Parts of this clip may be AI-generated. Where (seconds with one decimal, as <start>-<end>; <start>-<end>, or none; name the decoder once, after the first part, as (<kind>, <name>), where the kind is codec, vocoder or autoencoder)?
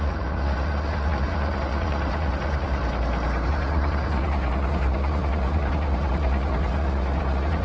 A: 0.0-2.8 (vocoder, Vocos); 3.5-7.6